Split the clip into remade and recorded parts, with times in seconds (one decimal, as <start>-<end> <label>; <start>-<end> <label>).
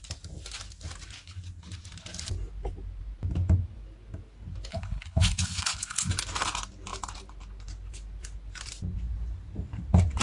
0.0-4.7 recorded; 4.7-6.1 remade; 6.1-10.2 recorded